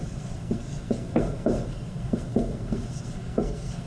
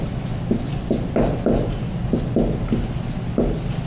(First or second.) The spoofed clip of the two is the first